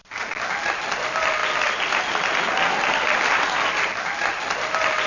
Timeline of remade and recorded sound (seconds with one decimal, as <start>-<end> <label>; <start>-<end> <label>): 0.0-0.7 recorded; 0.7-1.4 remade; 1.4-2.1 recorded; 2.1-5.1 remade